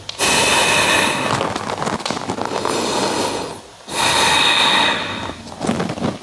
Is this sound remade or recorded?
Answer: recorded